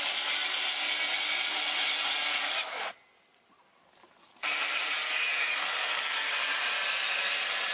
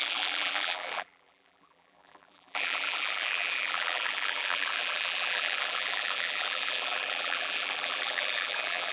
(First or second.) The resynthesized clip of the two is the second